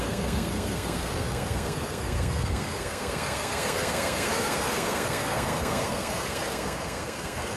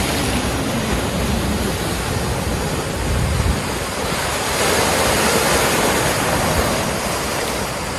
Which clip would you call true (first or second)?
second